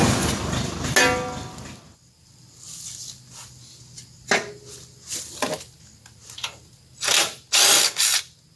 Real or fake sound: real